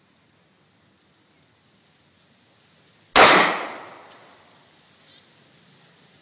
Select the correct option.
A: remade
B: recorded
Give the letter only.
B